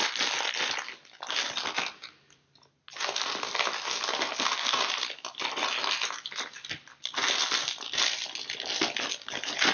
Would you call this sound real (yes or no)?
yes